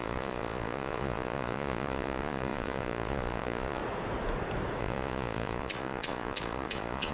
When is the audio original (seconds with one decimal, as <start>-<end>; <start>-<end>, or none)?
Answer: 3.8-4.8